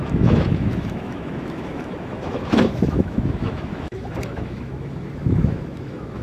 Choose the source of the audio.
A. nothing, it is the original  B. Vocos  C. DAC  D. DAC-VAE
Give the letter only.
D